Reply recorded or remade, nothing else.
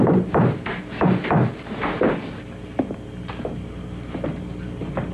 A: recorded